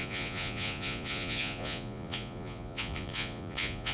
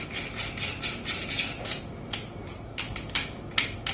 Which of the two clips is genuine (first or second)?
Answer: second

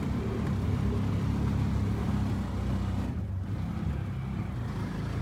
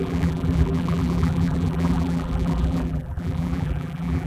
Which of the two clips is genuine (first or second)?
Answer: first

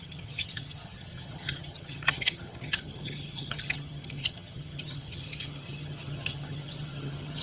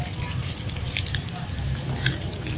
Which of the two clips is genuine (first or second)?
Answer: second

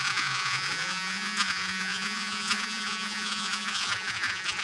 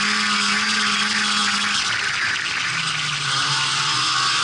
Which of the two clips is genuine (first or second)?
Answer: second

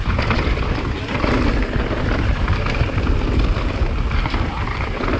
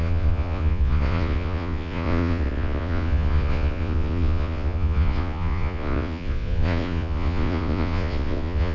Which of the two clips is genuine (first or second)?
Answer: first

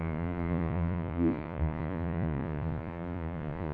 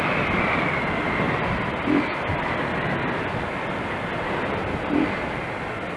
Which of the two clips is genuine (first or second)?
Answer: second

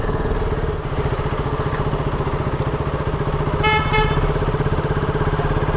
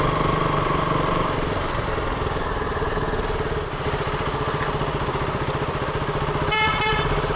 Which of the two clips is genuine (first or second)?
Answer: first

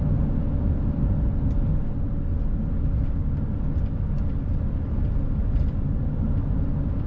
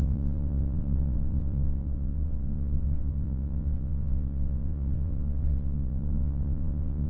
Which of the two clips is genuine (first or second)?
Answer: first